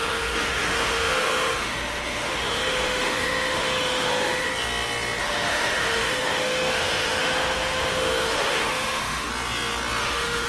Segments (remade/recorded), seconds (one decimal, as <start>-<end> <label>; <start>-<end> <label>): 0.0-4.5 remade; 4.5-5.2 recorded; 5.2-9.3 remade; 9.3-10.0 recorded; 10.0-10.5 remade

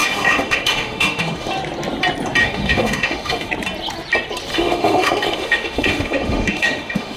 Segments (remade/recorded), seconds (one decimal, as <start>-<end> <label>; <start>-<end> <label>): 0.0-1.5 remade; 1.5-2.4 recorded; 2.4-3.5 remade; 3.5-4.5 recorded; 4.5-7.2 remade